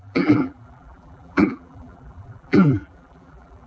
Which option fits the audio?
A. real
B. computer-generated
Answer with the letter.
B